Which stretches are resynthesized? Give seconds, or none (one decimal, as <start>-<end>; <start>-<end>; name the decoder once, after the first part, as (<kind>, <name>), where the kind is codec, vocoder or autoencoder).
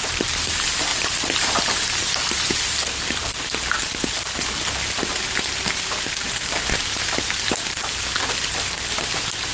0.9-3.4 (vocoder, BigVGAN v2)